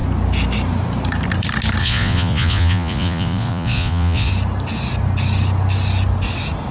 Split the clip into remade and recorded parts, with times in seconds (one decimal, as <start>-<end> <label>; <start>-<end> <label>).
0.0-1.8 recorded; 1.8-4.3 remade; 4.3-6.7 recorded